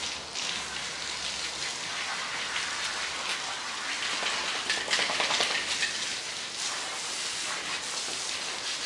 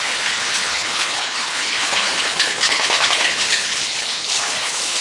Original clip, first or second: first